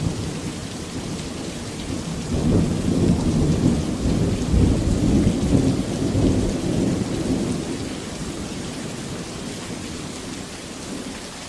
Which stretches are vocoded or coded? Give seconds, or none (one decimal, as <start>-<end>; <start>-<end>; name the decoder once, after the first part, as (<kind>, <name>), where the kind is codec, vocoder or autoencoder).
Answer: 8.2-8.9 (vocoder, BigVGAN v2)